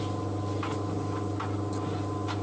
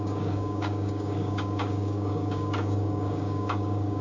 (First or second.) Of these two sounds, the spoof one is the second